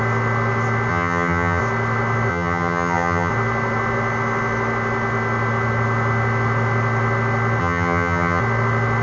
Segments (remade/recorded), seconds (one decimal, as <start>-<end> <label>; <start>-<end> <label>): 0.0-0.9 recorded; 0.9-1.6 remade; 1.6-2.3 recorded; 2.3-3.3 remade; 3.3-7.6 recorded; 7.6-8.4 remade; 8.4-9.0 recorded